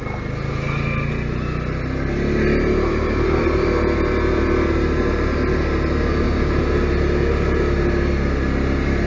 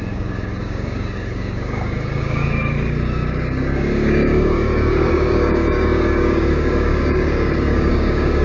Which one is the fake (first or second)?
second